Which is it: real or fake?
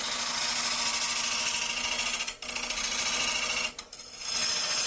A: real